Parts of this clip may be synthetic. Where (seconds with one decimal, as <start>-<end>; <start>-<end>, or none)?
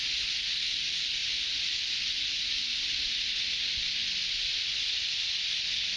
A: none